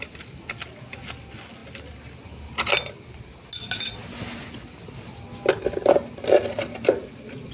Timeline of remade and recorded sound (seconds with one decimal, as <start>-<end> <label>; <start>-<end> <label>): 0.0-6.5 recorded; 6.5-7.1 remade; 7.1-7.5 recorded